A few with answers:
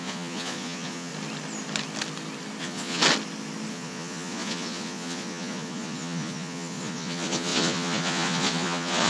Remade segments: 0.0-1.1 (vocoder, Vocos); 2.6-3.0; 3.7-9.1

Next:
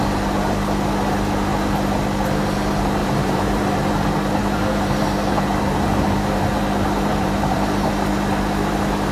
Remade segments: 3.0-3.9 (vocoder, BigVGAN v2); 4.4-6.6; 7.1-7.9

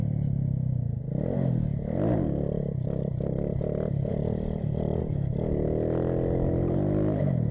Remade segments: none